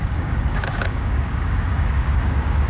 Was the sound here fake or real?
fake